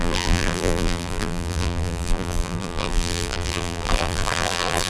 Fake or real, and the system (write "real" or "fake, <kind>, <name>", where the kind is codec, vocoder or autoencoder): fake, vocoder, BigVGAN v2